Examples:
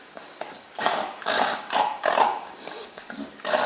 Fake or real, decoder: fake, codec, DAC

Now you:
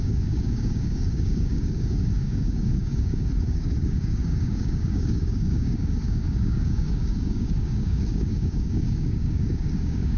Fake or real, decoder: fake, codec, DAC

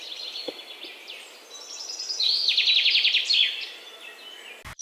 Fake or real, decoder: real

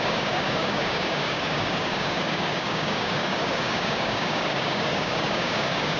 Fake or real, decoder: fake, codec, DAC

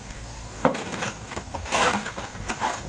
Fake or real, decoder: fake, codec, DAC